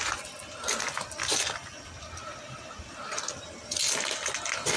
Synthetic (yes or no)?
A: no